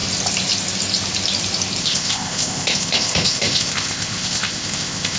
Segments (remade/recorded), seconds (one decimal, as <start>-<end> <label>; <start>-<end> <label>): 0.0-1.8 recorded; 1.8-5.2 remade